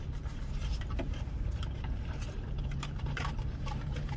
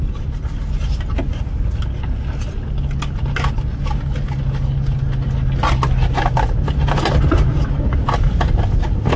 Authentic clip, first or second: second